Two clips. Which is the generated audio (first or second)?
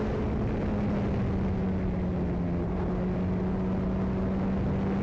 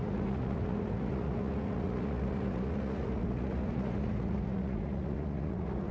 second